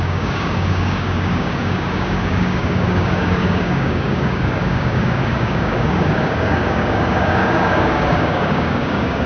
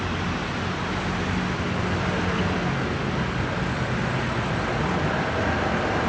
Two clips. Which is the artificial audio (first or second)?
first